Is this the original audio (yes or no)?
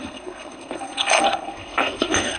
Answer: no